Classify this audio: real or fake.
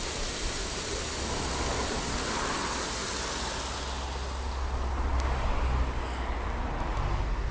real